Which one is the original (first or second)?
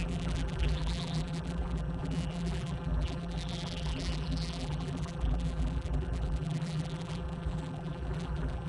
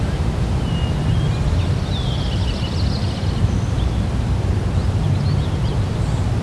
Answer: second